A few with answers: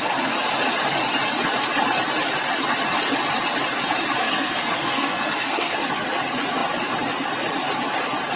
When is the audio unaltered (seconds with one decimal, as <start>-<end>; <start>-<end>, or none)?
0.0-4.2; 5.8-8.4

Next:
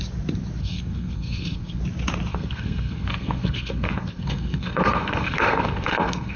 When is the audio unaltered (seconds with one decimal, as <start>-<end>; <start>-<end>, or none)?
0.0-0.6; 1.8-2.3

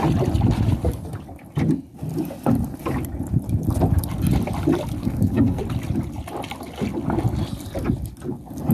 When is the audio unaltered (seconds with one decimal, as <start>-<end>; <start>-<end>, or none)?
0.0-5.0; 5.6-8.7

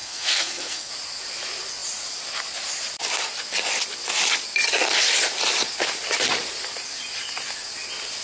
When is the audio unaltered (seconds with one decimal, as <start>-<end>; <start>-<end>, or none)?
0.9-8.2

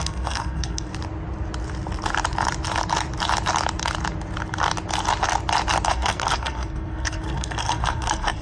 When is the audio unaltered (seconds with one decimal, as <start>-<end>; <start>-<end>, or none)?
0.9-5.9